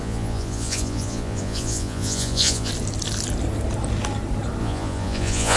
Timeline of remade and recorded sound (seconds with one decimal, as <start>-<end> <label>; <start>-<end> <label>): 0.0-2.7 remade; 2.7-4.6 recorded; 4.6-5.6 remade